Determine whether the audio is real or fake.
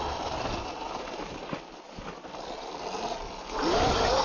real